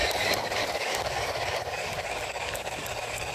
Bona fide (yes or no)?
no